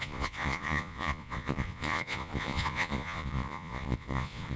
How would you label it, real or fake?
fake